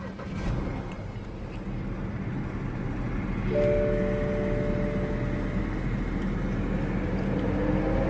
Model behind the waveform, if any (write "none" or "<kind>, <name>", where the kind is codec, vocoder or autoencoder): none